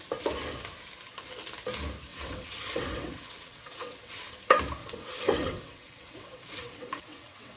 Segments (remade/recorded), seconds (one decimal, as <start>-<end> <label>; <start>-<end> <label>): 0.0-2.1 recorded; 2.1-4.3 remade; 4.3-4.8 recorded; 4.8-7.6 remade